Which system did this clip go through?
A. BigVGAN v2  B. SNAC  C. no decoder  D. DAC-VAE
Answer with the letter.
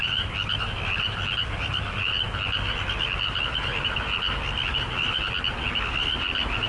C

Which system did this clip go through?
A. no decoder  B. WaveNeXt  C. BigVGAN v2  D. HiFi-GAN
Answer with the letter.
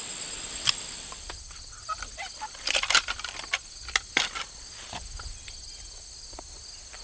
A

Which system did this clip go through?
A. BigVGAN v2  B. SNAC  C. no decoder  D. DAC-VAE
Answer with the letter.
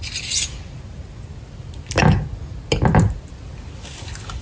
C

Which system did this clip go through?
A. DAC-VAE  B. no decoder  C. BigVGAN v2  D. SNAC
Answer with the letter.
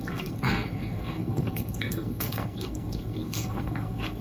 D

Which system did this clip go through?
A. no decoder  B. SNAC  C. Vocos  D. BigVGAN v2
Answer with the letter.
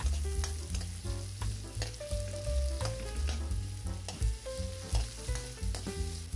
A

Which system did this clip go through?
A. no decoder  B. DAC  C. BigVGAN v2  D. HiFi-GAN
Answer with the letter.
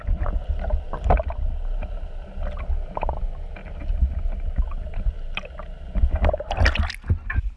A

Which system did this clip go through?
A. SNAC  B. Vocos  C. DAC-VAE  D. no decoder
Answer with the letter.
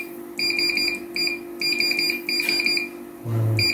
D